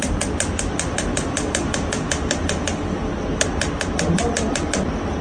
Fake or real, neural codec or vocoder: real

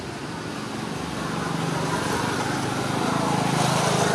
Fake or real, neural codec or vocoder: real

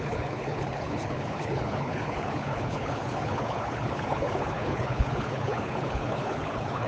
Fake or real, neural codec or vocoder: fake, codec, HILCodec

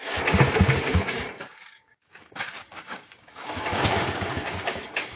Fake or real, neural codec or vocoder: fake, codec, DAC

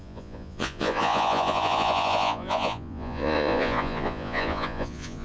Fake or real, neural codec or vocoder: fake, vocoder, Vocos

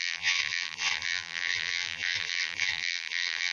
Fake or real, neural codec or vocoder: fake, vocoder, BigVGAN v2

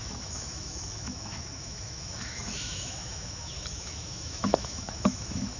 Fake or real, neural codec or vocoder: fake, autoencoder, DAC-VAE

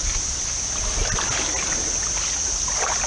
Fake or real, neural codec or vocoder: real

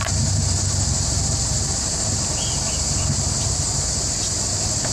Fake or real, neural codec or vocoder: real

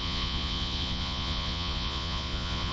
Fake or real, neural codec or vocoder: fake, vocoder, Vocos